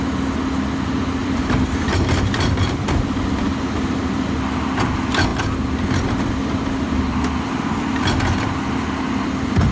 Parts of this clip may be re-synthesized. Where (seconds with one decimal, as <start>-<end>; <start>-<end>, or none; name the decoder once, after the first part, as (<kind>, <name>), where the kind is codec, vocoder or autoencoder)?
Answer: 1.2-4.2 (vocoder, BigVGAN v2)